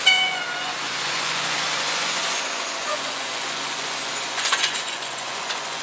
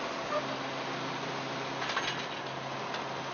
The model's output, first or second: first